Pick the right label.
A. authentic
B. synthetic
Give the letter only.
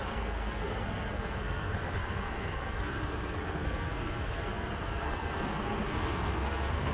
B